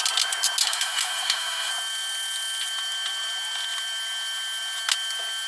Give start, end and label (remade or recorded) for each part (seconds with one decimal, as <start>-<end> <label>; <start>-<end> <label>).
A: 0.0-0.6 recorded; 0.6-1.7 remade; 1.7-5.5 recorded